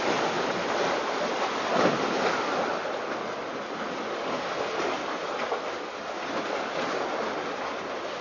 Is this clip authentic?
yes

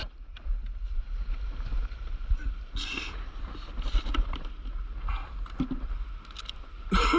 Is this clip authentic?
yes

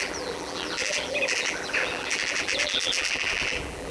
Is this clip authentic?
no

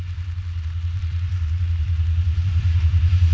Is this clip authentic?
no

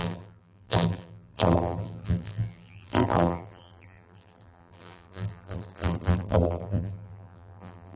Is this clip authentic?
no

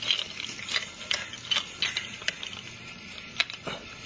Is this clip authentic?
yes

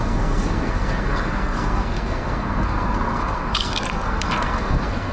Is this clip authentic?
no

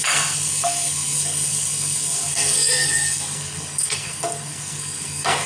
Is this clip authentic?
no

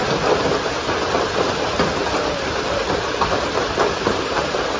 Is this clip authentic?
yes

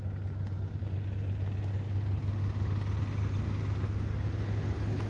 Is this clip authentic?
yes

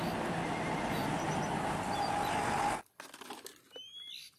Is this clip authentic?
yes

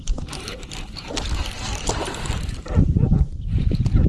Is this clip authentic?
no